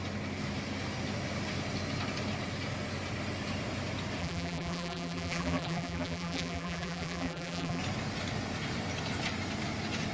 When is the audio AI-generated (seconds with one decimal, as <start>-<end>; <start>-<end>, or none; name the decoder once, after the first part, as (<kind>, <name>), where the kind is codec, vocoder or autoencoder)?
4.2-7.8 (vocoder, BigVGAN v2)